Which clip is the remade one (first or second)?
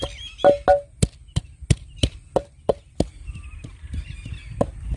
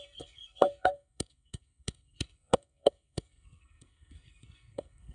second